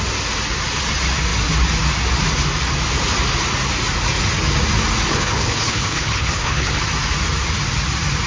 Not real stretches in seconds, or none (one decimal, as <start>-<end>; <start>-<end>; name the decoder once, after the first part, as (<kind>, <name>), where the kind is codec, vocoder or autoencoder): 5.1-6.8 (codec, HILCodec)